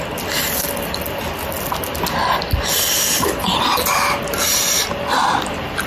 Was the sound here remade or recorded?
recorded